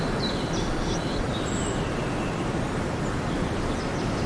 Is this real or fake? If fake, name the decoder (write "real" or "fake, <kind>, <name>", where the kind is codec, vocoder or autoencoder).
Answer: real